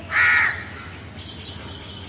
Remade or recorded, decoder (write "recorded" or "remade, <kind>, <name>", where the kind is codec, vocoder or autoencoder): recorded